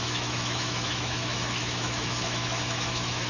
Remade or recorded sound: remade